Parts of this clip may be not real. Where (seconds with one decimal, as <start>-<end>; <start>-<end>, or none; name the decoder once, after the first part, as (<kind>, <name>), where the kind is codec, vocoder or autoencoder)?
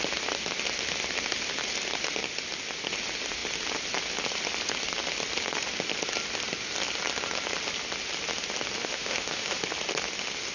8.8-9.6 (autoencoder, DAC-VAE)